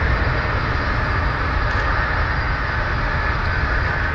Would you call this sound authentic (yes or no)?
yes